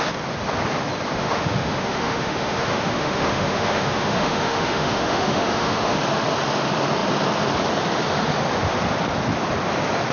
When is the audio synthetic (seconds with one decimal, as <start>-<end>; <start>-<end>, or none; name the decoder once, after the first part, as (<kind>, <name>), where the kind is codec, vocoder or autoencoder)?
1.2-6.0 (autoencoder, DAC-VAE)